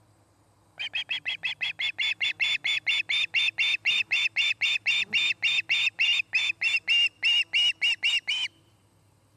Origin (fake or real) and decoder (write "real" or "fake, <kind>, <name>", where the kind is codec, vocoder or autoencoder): real